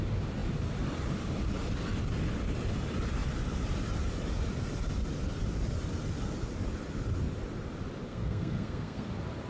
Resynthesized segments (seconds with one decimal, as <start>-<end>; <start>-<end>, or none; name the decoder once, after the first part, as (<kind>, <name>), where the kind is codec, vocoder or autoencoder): 8.1-9.1 (codec, SNAC)